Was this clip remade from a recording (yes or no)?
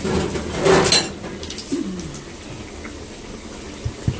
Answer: no